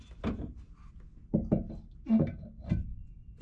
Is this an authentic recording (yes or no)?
yes